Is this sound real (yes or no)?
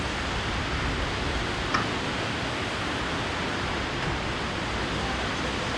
yes